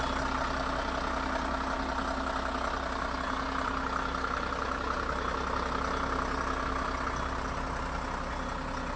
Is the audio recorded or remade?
recorded